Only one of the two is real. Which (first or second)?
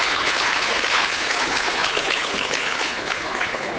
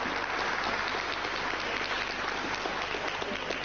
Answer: second